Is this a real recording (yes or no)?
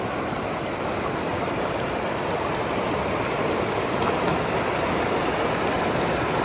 yes